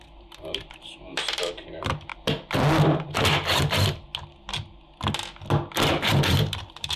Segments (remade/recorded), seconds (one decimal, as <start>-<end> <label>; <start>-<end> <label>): 0.0-2.1 remade; 2.1-6.1 recorded; 6.1-7.0 remade